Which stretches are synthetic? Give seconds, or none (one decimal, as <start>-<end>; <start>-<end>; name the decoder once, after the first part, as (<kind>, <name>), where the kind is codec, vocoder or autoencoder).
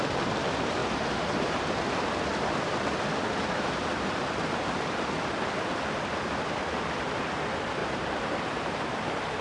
0.8-2.0 (vocoder, BigVGAN v2); 7.8-8.9